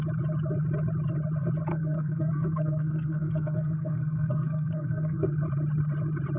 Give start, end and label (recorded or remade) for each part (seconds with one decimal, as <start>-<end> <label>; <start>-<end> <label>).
0.0-1.7 recorded; 1.7-5.3 remade; 5.3-6.4 recorded